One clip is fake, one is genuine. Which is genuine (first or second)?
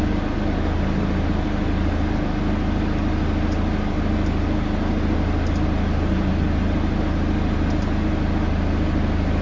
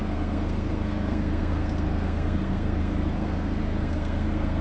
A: first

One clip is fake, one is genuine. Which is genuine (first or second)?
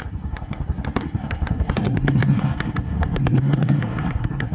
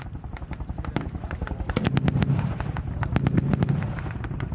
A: second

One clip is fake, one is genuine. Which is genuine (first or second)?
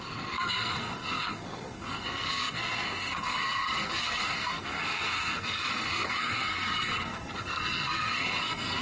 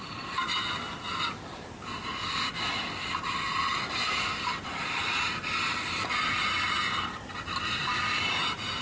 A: second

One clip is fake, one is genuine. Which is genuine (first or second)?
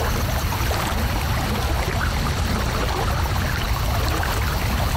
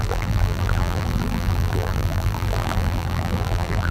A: first